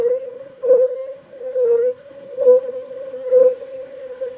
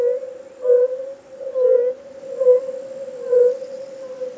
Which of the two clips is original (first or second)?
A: second